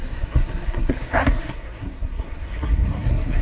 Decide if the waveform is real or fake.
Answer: fake